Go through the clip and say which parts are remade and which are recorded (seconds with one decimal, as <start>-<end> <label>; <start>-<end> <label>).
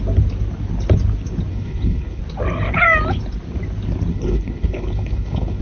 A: 0.0-1.5 recorded; 1.5-2.2 remade; 2.2-4.1 recorded; 4.1-5.6 remade